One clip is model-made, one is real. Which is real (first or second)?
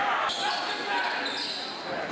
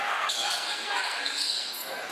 first